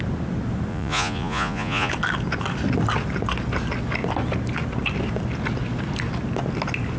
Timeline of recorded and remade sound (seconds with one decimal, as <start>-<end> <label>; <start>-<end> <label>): 0.0-0.7 recorded; 0.7-1.9 remade; 1.9-7.0 recorded